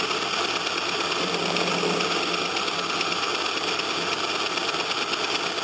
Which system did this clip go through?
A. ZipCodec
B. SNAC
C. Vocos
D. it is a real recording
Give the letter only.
D